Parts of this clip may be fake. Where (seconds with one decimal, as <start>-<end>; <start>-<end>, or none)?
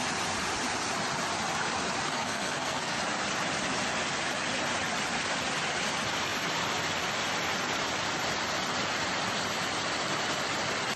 2.1-3.0